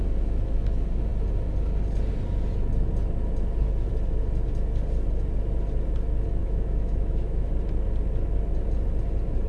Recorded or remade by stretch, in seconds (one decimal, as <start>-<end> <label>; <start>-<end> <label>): 0.0-6.4 recorded; 6.4-7.5 remade; 7.5-9.5 recorded